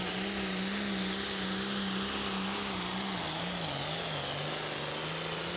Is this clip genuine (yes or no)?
yes